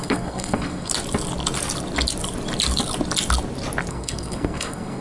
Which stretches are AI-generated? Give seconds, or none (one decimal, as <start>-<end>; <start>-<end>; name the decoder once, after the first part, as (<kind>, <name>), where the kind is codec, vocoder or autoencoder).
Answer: 0.0-0.9 (codec, SNAC); 3.9-5.0